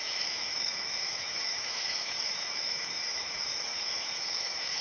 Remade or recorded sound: remade